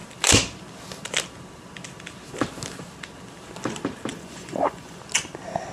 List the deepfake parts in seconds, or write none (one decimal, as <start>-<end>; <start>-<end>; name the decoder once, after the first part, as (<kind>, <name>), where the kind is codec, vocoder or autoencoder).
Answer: 4.1-5.0 (vocoder, Vocos)